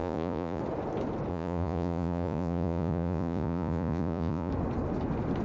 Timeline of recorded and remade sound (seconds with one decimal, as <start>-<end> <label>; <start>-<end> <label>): 0.0-0.6 remade; 0.6-1.3 recorded; 1.3-4.5 remade; 4.5-5.4 recorded